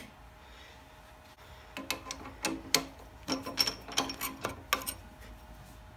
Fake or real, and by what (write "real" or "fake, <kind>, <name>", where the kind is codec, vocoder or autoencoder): real